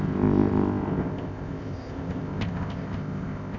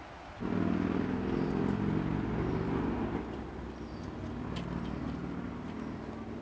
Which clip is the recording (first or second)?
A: second